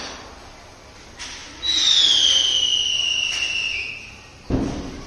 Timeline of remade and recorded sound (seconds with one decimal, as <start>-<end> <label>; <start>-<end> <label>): 0.0-5.1 recorded